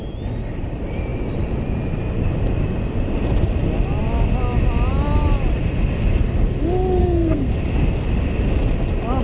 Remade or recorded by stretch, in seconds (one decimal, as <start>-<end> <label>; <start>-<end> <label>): 0.0-7.0 recorded; 7.0-7.5 remade; 7.5-9.2 recorded